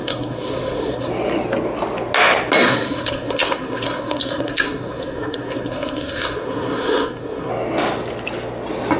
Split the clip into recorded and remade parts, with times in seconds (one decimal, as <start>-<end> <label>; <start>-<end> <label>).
0.0-1.1 remade; 1.1-2.6 recorded; 2.6-7.5 remade; 7.5-9.0 recorded